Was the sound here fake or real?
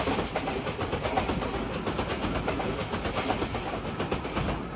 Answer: real